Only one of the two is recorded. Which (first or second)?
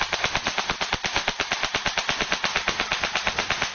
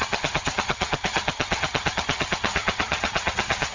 first